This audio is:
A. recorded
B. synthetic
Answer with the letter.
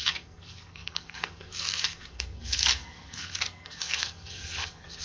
B